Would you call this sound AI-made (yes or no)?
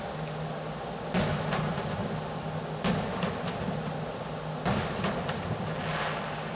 no